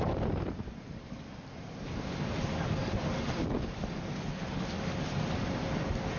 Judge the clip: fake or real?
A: real